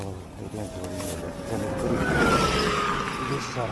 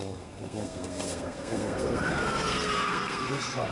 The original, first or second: first